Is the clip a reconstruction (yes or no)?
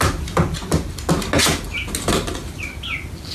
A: no